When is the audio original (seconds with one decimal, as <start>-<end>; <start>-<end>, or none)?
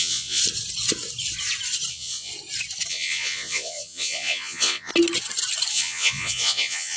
0.4-1.9; 2.3-2.9; 4.9-5.7